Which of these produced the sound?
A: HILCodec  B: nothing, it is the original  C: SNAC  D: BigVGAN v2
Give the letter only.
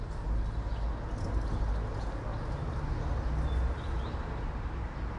B